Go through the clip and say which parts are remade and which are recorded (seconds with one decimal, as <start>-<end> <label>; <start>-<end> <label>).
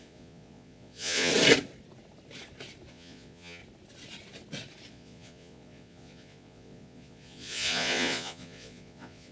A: 0.0-1.3 remade; 1.3-2.9 recorded; 2.9-3.6 remade; 3.6-4.9 recorded; 4.9-9.3 remade